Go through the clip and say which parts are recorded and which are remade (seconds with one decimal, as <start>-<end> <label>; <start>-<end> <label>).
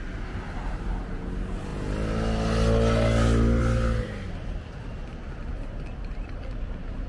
0.0-7.1 recorded